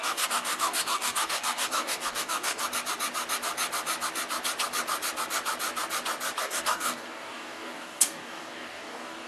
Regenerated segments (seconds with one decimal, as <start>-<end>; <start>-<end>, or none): 0.0-2.6; 6.4-9.3